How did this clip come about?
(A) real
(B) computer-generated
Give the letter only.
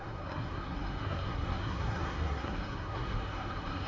B